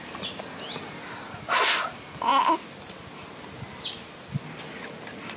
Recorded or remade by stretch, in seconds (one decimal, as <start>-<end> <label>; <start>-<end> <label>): 0.0-5.4 recorded